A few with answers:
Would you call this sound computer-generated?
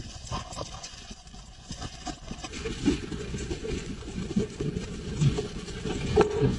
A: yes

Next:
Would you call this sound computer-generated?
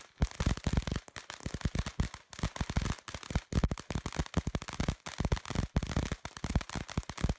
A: no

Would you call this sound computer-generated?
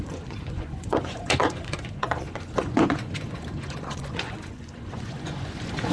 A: yes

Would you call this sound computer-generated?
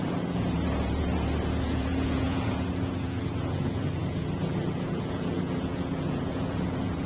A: yes